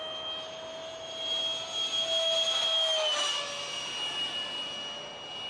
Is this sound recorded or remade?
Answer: recorded